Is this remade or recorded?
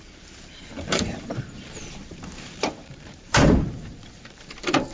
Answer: remade